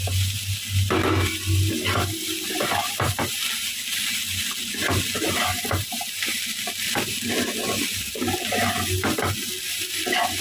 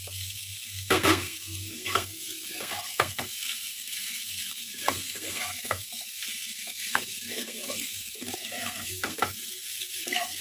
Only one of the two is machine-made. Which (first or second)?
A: second